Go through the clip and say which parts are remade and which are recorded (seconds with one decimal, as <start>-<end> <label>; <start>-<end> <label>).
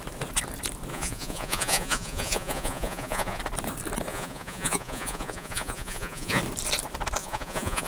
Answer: 0.0-0.9 recorded; 0.9-3.4 remade; 3.4-4.1 recorded; 4.1-6.4 remade; 6.4-7.2 recorded; 7.2-7.9 remade